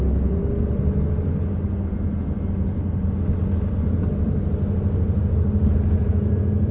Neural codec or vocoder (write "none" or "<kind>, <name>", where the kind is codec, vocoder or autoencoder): none